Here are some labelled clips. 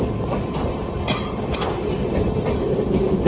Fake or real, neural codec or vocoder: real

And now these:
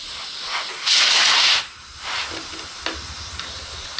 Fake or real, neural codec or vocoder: real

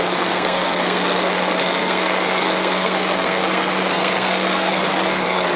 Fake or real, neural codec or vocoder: fake, codec, SNAC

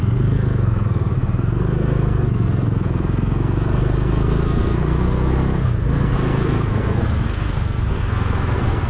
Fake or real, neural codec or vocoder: fake, codec, SNAC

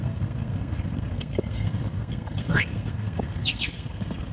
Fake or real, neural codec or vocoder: fake, codec, SNAC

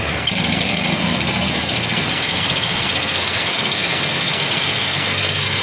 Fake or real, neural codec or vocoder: fake, codec, SNAC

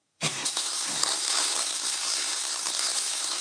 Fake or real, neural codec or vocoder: fake, codec, SNAC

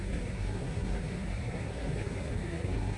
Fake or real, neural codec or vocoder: fake, codec, SNAC